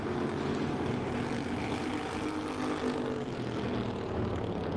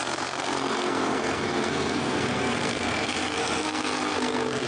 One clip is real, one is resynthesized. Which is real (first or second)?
first